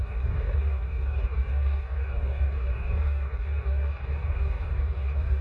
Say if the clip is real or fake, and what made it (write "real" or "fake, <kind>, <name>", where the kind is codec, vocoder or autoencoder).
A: fake, codec, DAC